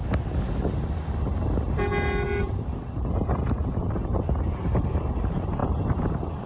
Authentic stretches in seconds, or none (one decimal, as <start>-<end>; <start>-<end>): 0.0-2.4